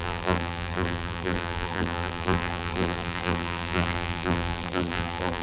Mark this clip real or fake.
fake